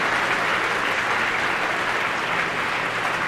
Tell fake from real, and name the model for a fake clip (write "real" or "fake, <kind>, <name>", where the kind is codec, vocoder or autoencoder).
real